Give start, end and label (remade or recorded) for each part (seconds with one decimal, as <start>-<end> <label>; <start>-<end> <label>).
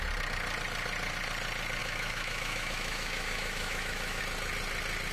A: 0.0-1.8 recorded; 1.8-4.2 remade; 4.2-5.1 recorded